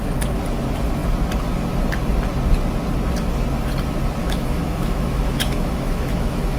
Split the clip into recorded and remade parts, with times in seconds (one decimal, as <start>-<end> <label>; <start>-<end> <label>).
0.0-4.2 recorded; 4.2-6.6 remade